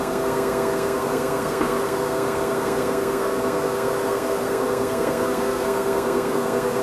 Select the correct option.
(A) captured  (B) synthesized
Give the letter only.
B